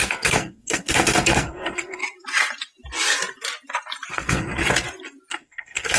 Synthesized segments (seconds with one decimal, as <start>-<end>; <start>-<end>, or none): 0.0-2.0; 4.1-4.6; 5.3-6.0